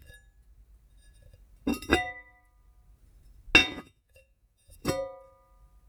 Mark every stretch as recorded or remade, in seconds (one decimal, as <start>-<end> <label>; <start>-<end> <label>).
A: 0.0-3.6 recorded; 3.6-4.7 remade; 4.7-5.9 recorded